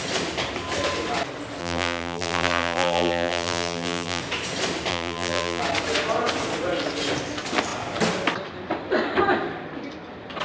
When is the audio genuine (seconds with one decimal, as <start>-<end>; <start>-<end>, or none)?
0.0-1.6; 4.2-4.9; 5.6-10.4